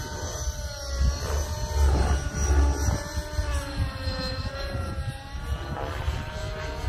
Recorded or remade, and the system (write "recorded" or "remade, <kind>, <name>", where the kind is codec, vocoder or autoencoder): recorded